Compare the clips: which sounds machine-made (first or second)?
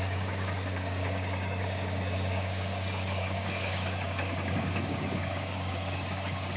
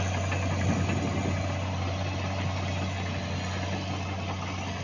first